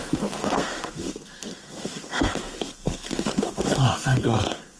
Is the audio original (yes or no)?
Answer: no